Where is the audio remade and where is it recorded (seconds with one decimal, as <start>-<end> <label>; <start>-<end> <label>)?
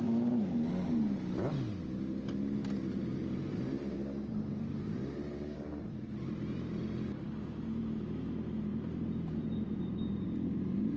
0.0-3.5 recorded; 3.5-5.7 remade; 5.7-8.7 recorded; 8.7-11.0 remade